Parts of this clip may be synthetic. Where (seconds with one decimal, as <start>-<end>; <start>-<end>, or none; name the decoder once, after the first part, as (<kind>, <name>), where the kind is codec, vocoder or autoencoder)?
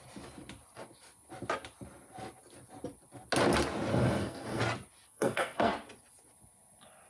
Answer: 3.9-4.6 (codec, SNAC); 5.1-5.7